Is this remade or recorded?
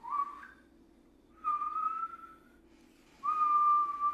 remade